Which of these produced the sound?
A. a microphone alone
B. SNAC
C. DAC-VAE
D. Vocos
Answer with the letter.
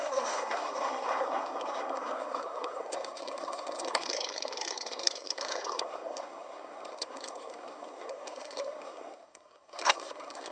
B